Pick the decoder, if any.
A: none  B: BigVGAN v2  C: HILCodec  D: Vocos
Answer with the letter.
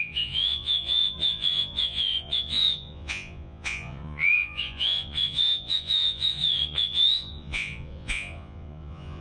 D